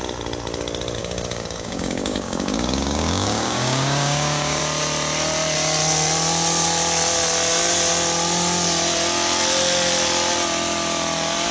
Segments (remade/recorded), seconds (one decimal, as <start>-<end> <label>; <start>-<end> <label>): 0.0-1.0 recorded; 1.0-4.6 remade; 4.6-11.5 recorded